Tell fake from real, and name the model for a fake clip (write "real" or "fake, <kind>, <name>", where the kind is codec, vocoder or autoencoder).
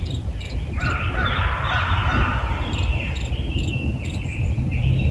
fake, vocoder, BigVGAN v2